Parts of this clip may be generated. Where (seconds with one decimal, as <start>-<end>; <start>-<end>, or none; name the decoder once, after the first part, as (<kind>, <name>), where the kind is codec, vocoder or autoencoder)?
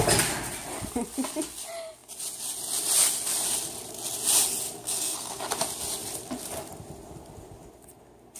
4.8-5.4 (codec, SNAC)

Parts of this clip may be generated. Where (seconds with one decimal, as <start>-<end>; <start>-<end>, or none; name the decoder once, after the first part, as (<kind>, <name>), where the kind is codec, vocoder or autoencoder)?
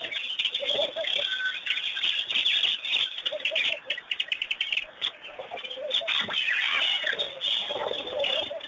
2.9-5.9 (vocoder, BigVGAN v2); 7.8-8.7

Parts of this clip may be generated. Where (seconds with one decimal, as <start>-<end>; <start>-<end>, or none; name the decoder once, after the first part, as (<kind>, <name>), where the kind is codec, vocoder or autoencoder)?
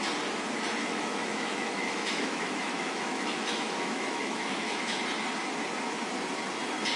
0.8-5.0 (autoencoder, DAC-VAE)